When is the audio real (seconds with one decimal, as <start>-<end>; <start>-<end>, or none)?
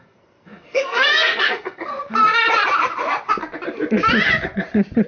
1.9-5.1